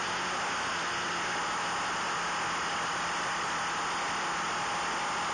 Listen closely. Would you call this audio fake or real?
real